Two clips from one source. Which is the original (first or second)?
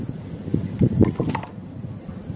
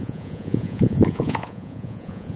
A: first